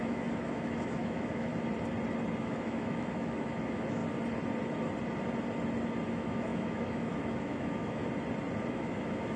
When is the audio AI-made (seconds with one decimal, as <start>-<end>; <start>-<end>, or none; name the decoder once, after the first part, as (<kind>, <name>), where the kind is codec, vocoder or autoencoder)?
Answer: 0.0-1.5 (autoencoder, DAC-VAE); 2.4-4.0; 6.1-8.0; 8.7-9.4